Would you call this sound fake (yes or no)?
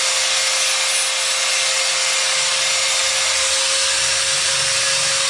no